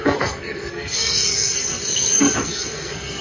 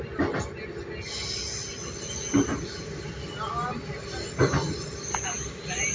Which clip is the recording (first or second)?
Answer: second